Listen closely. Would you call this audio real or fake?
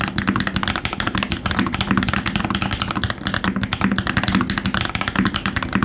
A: real